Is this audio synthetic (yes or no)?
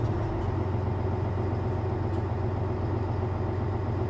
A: no